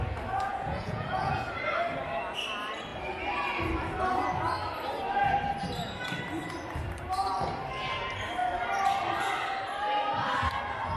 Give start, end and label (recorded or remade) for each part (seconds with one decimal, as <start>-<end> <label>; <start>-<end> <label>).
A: 0.0-0.5 recorded; 0.5-1.5 remade; 1.5-11.0 recorded